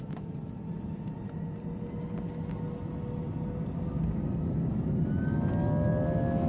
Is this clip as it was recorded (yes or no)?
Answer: yes